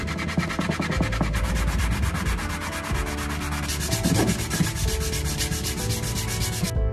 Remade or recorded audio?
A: recorded